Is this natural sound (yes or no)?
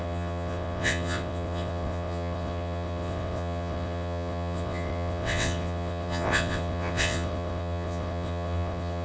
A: no